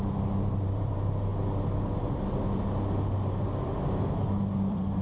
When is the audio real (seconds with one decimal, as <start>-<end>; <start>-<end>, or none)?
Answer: 1.3-4.0